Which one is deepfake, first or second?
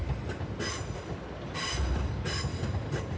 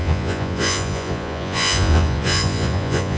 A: second